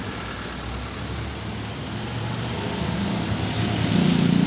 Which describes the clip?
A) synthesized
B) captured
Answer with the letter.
B